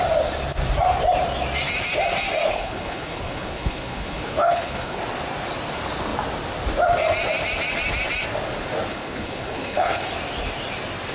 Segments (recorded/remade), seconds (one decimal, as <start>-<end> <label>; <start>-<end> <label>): 0.0-2.5 recorded; 2.5-5.0 remade; 5.0-8.9 recorded; 8.9-10.1 remade; 10.1-11.1 recorded